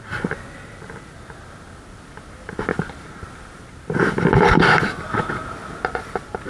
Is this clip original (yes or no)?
yes